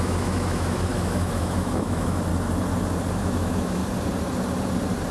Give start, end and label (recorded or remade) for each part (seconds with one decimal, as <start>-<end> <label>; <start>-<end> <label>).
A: 0.0-2.3 remade; 2.3-3.1 recorded; 3.1-3.8 remade; 3.8-5.1 recorded